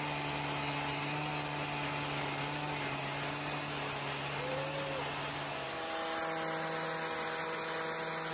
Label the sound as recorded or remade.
recorded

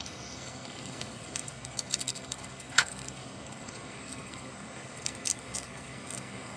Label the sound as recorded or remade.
remade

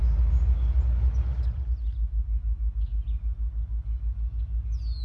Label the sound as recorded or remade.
recorded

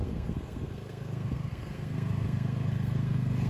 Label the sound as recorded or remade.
remade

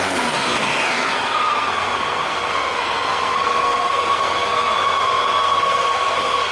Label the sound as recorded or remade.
remade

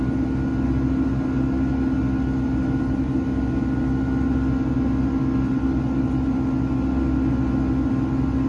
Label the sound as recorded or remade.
recorded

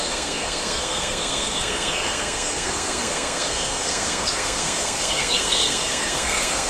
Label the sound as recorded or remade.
remade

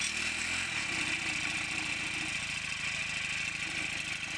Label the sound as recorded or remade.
recorded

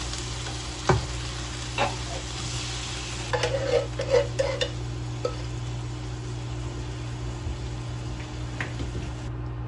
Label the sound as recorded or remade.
recorded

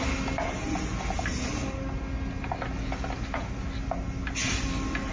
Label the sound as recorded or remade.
recorded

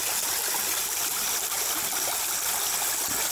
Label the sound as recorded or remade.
recorded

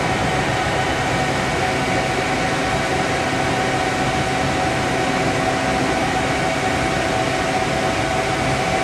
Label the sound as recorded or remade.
recorded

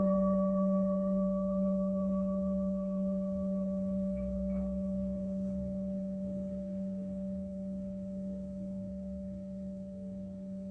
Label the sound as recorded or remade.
remade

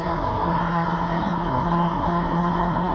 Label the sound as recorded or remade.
remade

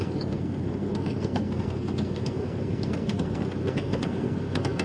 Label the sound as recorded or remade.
remade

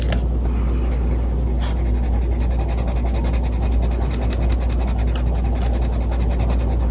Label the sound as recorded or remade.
recorded